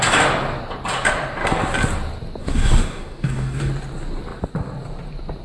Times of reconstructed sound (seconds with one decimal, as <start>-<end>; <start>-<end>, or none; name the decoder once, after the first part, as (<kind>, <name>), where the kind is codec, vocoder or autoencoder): 2.4-3.7 (codec, DAC)